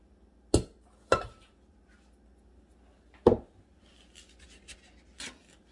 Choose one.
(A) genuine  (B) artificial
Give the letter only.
A